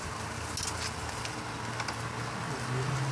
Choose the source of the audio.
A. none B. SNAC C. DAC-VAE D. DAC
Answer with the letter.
A